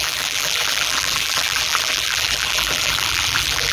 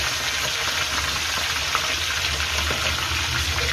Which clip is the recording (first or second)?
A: second